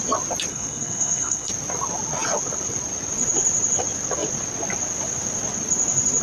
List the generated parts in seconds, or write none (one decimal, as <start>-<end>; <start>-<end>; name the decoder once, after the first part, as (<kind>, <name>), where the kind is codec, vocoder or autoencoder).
0.5-1.5 (codec, SNAC)